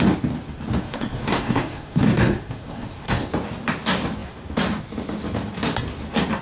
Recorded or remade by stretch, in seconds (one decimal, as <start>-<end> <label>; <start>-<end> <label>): 0.0-0.8 recorded; 0.8-3.3 remade; 3.3-6.4 recorded